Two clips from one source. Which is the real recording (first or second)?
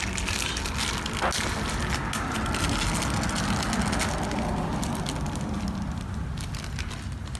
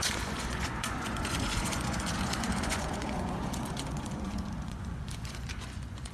first